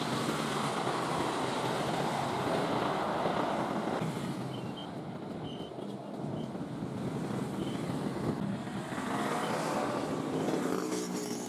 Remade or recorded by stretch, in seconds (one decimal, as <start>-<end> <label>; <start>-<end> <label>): 0.0-11.5 recorded